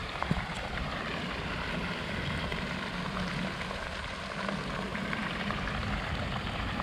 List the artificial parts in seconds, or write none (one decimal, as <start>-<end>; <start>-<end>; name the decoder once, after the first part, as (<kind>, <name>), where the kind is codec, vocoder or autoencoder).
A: 0.0-1.0 (vocoder, BigVGAN v2); 4.9-5.5